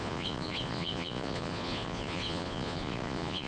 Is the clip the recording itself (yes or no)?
no